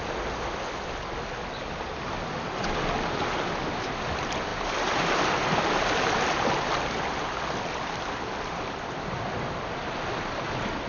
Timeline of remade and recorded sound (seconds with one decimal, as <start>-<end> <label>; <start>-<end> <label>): 0.0-10.9 recorded